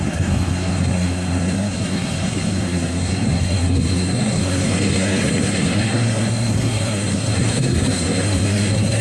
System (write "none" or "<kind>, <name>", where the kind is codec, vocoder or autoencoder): codec, SNAC